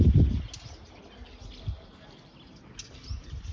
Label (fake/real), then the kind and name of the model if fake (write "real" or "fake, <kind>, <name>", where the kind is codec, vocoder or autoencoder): real